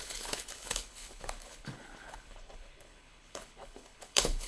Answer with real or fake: fake